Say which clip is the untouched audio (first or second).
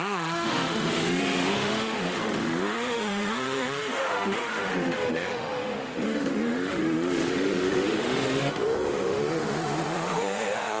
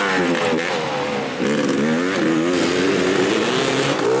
second